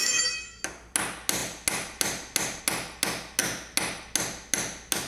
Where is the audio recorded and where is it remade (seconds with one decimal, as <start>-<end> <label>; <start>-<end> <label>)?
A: 0.0-0.6 remade; 0.6-5.1 recorded